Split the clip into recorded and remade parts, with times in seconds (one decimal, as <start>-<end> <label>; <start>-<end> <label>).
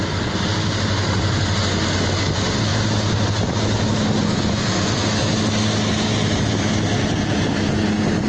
0.0-8.3 recorded